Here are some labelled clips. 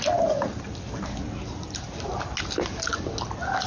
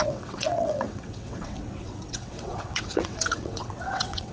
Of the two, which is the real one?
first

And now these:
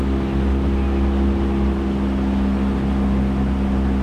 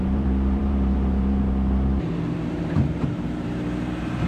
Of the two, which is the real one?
first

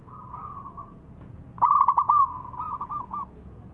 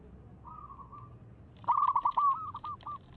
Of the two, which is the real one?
second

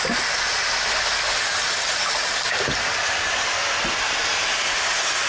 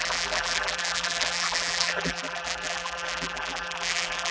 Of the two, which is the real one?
first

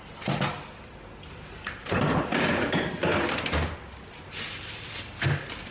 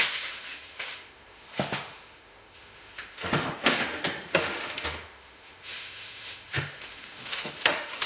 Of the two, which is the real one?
first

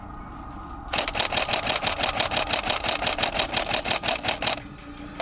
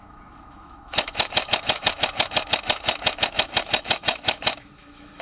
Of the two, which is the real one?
first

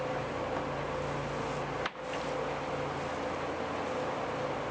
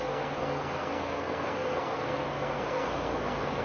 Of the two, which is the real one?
first